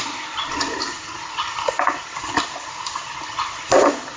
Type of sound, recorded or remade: recorded